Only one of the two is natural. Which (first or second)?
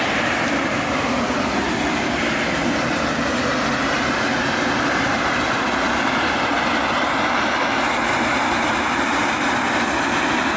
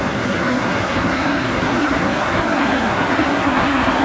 first